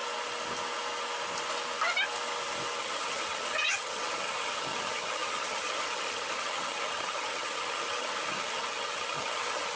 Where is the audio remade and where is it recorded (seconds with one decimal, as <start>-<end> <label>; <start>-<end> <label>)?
0.0-2.8 recorded; 2.8-9.8 remade